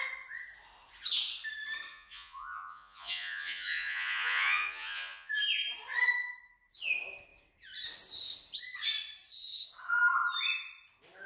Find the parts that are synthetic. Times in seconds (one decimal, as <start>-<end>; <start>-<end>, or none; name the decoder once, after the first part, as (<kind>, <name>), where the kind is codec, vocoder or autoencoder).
1.9-5.4 (vocoder, Vocos)

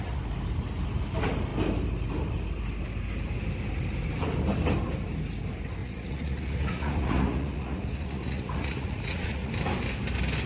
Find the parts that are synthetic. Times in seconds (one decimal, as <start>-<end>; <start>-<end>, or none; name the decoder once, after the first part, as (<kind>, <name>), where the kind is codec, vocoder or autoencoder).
5.8-9.5 (vocoder, Vocos)

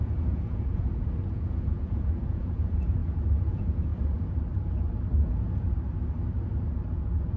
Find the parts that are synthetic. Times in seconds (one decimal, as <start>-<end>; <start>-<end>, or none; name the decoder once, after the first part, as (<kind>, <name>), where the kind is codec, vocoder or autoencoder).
0.0-3.0 (vocoder, Vocos); 3.5-3.9; 6.9-7.4

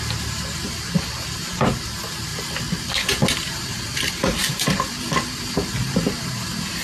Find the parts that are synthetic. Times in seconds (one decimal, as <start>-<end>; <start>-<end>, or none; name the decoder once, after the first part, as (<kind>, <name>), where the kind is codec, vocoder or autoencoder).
0.0-2.3 (vocoder, BigVGAN v2); 2.9-6.8

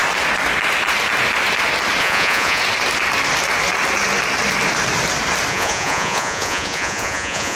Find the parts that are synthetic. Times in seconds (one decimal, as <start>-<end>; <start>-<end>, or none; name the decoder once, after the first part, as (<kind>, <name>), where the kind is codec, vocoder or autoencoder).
2.0-2.6 (vocoder, Vocos); 5.5-7.6

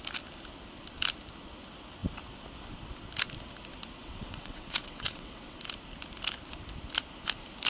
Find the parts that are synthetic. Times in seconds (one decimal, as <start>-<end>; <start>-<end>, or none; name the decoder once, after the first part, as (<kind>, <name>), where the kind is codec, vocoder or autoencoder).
4.0-5.6 (vocoder, WaveNeXt)

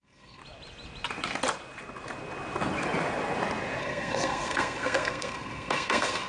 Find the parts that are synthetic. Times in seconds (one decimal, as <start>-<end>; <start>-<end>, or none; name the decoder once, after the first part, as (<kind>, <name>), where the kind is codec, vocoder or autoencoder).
0.0-0.4 (codec, SNAC); 3.8-6.3